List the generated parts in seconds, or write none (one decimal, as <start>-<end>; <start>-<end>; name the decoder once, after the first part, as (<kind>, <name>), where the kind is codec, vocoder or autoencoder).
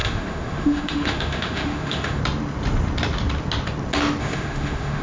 0.0-2.2 (autoencoder, DAC-VAE); 4.2-5.0